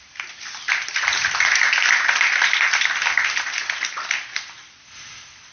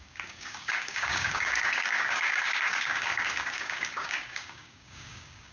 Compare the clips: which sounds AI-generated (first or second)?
second